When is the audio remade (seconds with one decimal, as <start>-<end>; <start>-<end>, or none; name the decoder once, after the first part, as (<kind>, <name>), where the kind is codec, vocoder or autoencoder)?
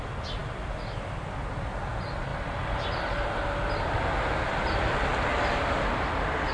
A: none